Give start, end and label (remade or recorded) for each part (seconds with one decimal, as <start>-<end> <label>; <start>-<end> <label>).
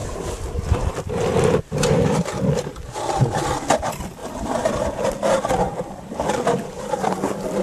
0.0-4.2 recorded; 4.2-4.7 remade; 4.7-7.6 recorded